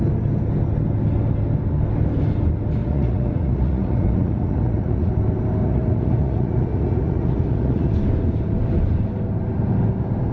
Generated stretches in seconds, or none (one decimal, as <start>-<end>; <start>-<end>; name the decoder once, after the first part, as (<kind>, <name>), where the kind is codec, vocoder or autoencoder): 2.8-5.1 (vocoder, Vocos); 5.6-7.9